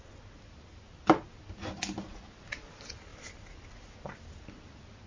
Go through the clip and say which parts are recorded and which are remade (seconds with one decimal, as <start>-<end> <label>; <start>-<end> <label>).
0.0-5.1 recorded